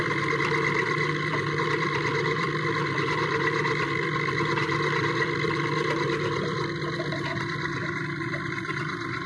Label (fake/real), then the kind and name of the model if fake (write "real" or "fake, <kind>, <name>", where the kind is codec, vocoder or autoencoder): fake, vocoder, BigVGAN v2